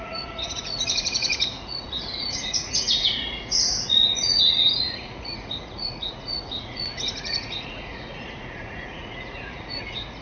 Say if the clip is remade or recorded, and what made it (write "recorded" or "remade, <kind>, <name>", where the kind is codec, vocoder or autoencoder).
remade, vocoder, Vocos